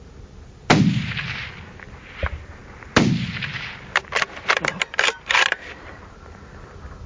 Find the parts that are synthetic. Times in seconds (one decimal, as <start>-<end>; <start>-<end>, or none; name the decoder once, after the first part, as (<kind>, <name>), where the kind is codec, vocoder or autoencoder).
none